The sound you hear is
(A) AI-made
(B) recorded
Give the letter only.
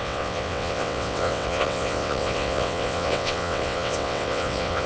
A